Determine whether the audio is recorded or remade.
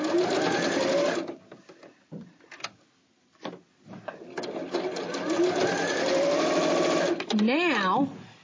recorded